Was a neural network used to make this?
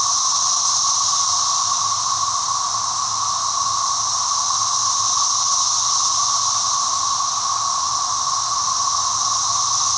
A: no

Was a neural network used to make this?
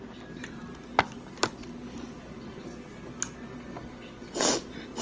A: no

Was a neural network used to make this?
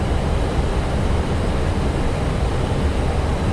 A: no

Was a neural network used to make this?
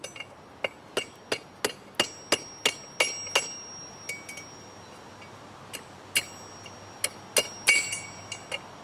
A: no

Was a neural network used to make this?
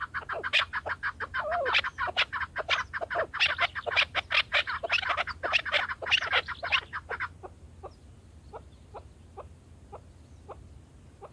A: no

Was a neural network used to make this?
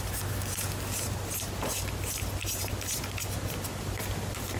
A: no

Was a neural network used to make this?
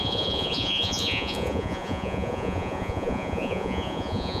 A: yes